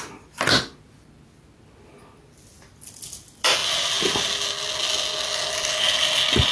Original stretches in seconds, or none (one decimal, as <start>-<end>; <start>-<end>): 0.0-6.5